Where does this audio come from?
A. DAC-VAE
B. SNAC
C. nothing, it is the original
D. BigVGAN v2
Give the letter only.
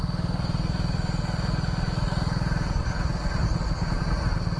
C